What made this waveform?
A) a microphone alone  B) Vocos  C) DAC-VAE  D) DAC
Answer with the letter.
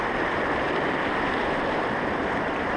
A